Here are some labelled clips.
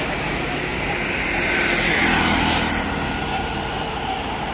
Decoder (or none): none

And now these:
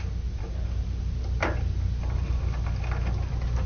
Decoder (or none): none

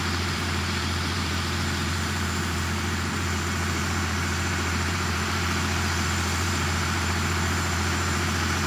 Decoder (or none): vocoder, BigVGAN v2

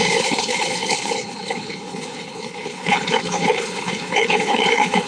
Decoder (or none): codec, HILCodec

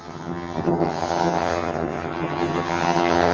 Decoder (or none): vocoder, HiFi-GAN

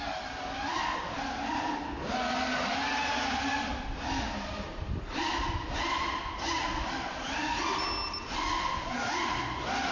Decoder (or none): none